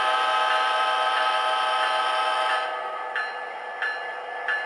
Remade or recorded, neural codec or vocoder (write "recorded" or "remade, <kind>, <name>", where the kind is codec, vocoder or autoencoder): recorded